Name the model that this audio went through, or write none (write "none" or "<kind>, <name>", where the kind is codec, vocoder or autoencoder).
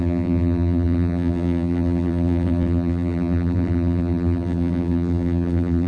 vocoder, BigVGAN v2